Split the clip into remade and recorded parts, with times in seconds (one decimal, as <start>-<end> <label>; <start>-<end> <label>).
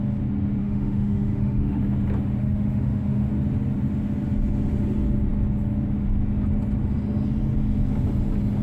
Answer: 0.0-0.6 recorded; 0.6-1.8 remade; 1.8-2.4 recorded; 2.4-3.3 remade; 3.3-8.6 recorded